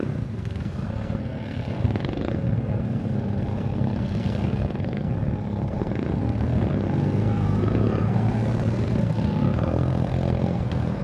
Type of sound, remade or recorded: remade